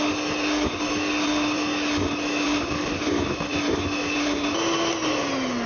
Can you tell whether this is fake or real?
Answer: real